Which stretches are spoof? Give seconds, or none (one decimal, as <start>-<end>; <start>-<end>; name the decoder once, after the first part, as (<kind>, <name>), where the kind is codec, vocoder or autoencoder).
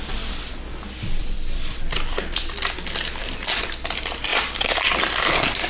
1.2-3.6 (vocoder, BigVGAN v2); 4.3-5.2